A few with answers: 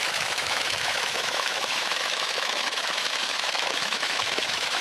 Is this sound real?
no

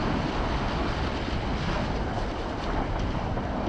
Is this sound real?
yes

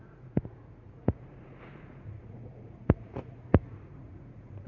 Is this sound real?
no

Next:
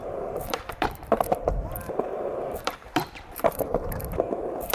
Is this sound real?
no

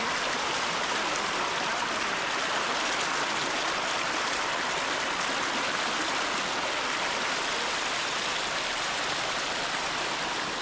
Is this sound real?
yes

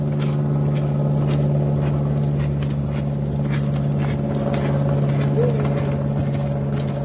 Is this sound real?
yes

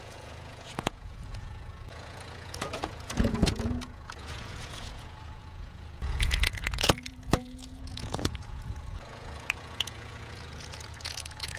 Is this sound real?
no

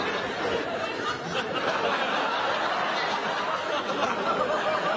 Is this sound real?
yes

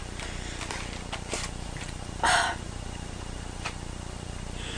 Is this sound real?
no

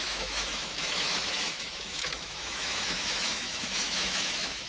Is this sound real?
no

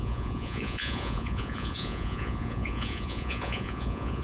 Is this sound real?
no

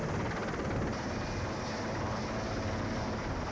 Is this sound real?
yes